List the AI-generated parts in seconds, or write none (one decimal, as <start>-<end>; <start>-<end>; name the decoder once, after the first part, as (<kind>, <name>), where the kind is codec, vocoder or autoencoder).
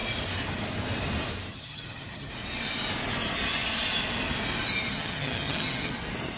1.5-2.3 (vocoder, HiFi-GAN); 4.9-5.9